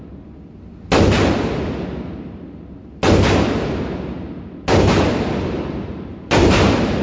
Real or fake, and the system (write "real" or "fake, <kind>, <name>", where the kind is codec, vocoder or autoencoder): real